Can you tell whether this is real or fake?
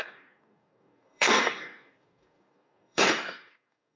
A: fake